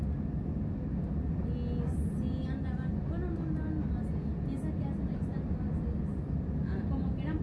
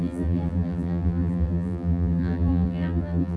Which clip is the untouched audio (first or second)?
first